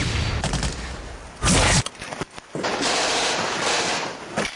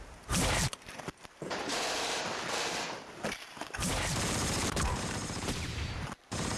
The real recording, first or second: first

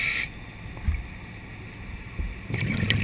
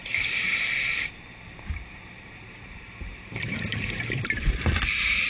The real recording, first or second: first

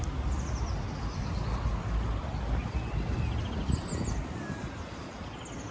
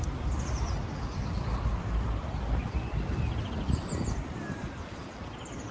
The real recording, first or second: first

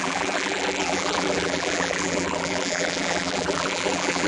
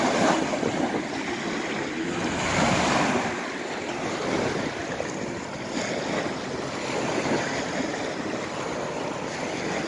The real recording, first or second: second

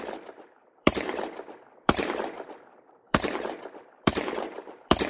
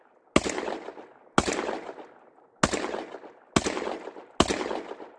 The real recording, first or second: second